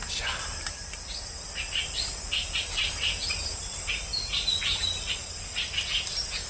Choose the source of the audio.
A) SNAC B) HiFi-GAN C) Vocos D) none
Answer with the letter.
D